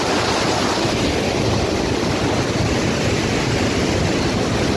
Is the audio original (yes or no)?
yes